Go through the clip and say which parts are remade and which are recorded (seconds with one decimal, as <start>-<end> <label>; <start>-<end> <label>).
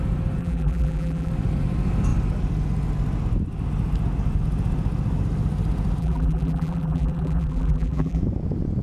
0.0-0.4 recorded; 0.4-1.3 remade; 1.3-6.0 recorded; 6.0-8.2 remade; 8.2-8.8 recorded